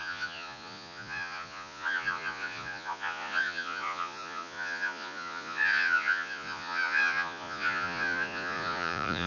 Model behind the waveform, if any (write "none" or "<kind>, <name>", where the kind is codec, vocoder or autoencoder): vocoder, Vocos